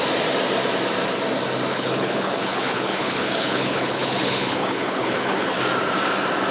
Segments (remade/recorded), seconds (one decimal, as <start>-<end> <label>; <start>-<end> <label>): 0.0-1.7 recorded; 1.7-5.6 remade; 5.6-6.5 recorded